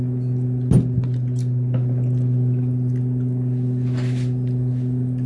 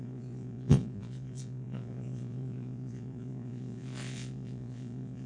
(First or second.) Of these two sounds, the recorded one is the first